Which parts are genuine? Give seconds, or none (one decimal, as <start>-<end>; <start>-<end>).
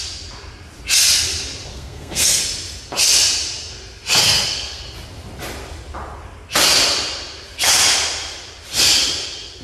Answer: 0.0-1.7; 2.4-4.2; 4.8-9.6